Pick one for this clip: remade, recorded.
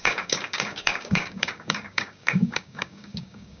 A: remade